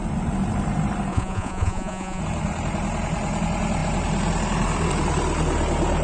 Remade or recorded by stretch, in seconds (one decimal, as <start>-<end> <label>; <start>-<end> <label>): 0.0-1.1 recorded; 1.1-2.2 remade; 2.2-6.0 recorded